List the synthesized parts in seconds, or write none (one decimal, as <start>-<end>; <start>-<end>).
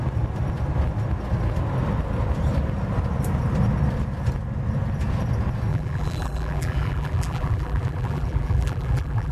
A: 5.7-9.3